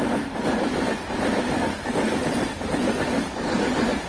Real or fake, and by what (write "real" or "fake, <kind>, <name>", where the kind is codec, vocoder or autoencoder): fake, vocoder, BigVGAN v2